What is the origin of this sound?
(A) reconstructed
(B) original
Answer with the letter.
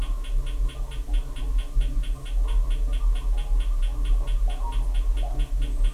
B